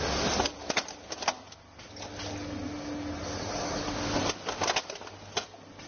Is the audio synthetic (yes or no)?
no